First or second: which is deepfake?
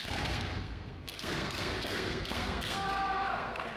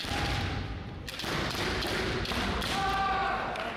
first